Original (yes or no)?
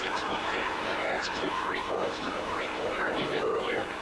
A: no